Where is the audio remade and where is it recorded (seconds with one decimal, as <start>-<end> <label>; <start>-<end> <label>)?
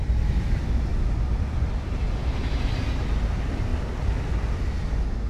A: 0.0-5.3 recorded